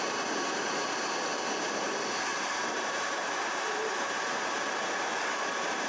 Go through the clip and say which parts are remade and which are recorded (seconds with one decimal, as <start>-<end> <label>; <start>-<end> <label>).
0.0-2.3 recorded; 2.3-4.8 remade; 4.8-5.9 recorded